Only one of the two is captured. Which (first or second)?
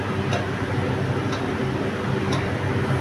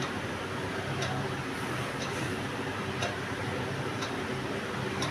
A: first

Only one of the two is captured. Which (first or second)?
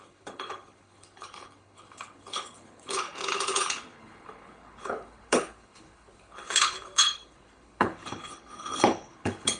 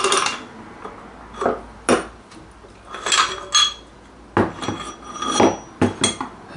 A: second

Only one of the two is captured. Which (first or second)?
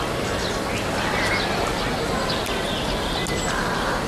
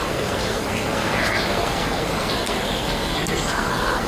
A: first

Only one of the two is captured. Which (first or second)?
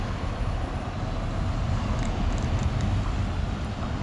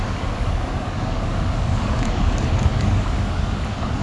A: first